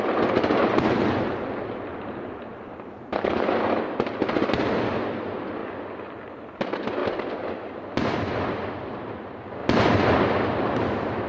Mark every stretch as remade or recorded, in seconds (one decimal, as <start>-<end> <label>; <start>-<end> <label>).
0.0-9.6 recorded; 9.6-11.3 remade